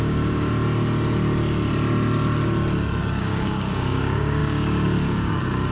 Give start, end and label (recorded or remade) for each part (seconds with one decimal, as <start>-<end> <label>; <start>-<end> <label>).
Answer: 0.0-0.5 remade; 0.5-3.2 recorded; 3.2-5.7 remade